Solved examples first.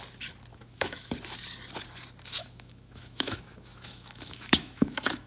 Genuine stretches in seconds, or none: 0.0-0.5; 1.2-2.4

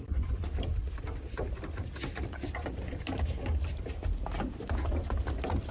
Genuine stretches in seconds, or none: 0.0-5.7

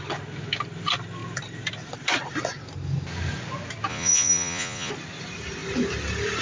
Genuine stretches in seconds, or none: 0.0-3.9; 4.9-6.4

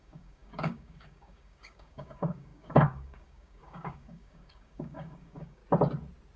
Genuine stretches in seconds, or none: 5.6-6.4

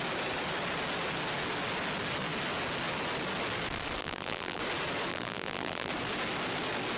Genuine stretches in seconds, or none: 0.0-4.0; 4.6-5.1; 5.9-7.0

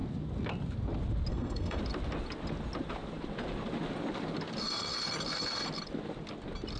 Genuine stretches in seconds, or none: 0.0-1.3; 1.8-6.8

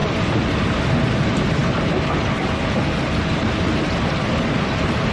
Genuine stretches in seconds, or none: 0.0-1.2; 1.6-3.3

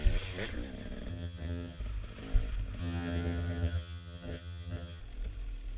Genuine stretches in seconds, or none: 0.0-1.1; 1.8-2.8; 5.0-5.8